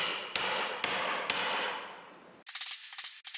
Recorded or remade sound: recorded